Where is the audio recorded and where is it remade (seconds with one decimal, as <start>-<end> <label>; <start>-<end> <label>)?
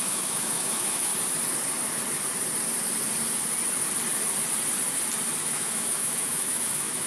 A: 0.0-1.1 remade; 1.1-5.4 recorded; 5.4-7.1 remade